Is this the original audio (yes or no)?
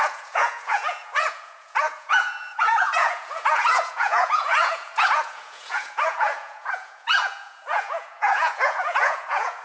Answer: no